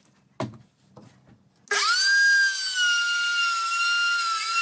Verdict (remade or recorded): recorded